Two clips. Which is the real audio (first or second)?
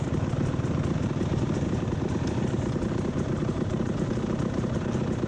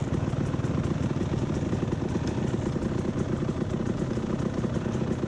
second